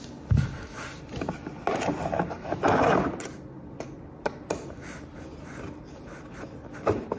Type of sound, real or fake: real